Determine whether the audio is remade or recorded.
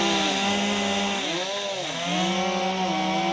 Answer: recorded